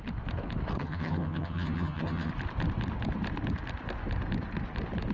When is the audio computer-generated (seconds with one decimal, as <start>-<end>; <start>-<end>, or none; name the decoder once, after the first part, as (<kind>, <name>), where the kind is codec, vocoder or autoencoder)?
0.8-2.3 (vocoder, HiFi-GAN)